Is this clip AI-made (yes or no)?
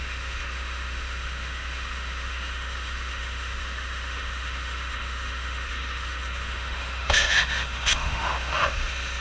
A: yes